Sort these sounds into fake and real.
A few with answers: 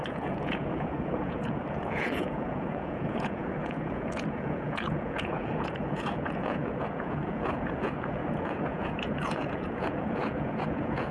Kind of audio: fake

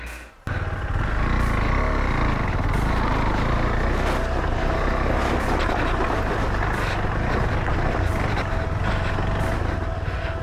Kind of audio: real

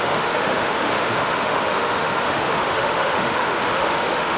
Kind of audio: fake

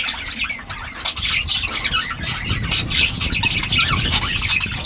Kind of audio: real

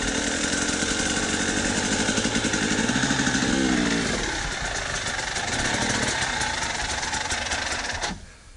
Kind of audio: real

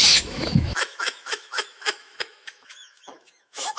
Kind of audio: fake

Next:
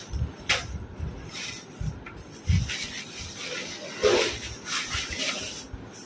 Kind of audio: real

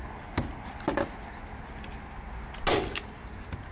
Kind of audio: real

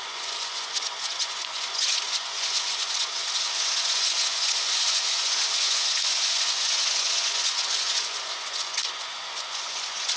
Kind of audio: fake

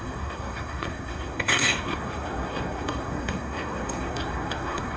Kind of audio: fake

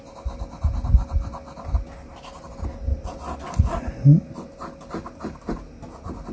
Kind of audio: real